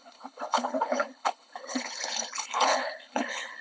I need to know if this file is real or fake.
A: fake